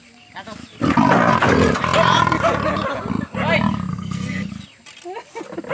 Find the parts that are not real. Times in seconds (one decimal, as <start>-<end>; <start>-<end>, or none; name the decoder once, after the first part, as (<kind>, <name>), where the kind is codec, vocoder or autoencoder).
3.9-4.5 (codec, SNAC)